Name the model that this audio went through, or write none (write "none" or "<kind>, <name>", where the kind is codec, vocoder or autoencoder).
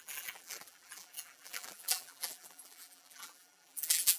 vocoder, BigVGAN v2